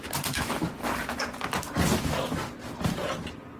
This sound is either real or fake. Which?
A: real